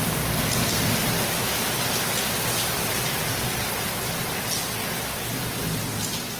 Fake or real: real